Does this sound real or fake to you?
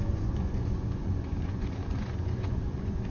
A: fake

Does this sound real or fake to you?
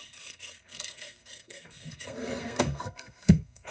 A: fake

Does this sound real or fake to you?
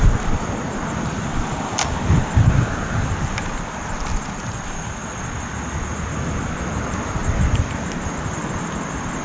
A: real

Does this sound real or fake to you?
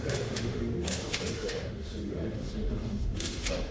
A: fake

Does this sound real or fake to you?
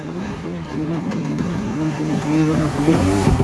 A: fake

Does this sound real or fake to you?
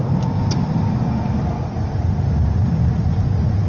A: real